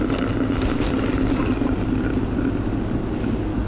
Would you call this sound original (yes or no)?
yes